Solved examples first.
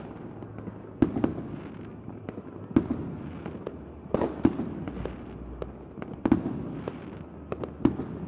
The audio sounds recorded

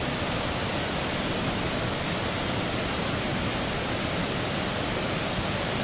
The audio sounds recorded